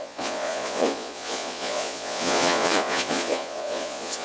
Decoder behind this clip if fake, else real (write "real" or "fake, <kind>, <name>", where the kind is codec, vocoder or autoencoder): fake, vocoder, Vocos